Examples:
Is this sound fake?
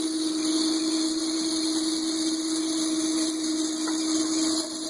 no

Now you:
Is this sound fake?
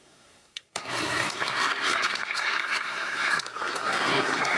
yes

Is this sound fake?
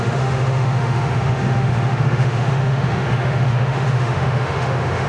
yes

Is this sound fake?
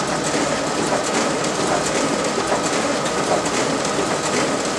no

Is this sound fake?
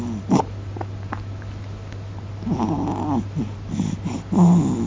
no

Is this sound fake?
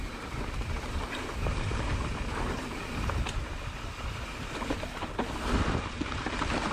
no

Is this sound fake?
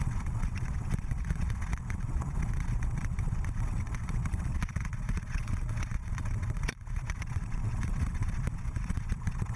yes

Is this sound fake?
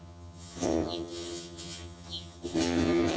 yes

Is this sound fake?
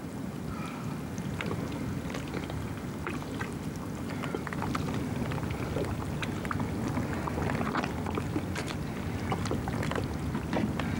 no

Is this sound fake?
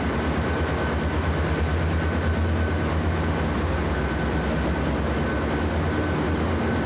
no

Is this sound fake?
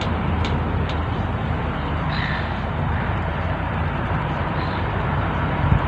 yes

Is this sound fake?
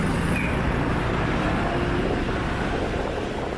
no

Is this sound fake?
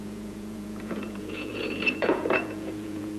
yes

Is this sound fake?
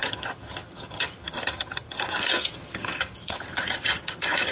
yes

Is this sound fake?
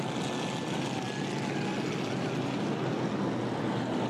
no